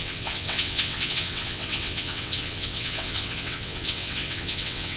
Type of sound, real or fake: fake